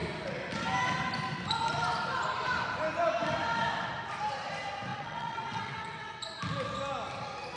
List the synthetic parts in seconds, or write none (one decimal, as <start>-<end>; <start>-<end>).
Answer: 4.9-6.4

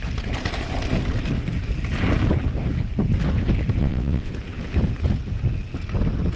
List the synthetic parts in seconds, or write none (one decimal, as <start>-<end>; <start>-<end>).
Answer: 3.8-4.3

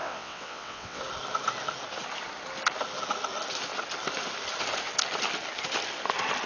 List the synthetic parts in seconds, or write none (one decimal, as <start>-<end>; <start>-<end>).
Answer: 0.0-1.0

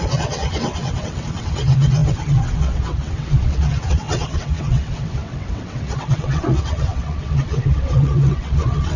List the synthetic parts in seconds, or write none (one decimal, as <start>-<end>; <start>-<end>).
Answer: 0.0-9.0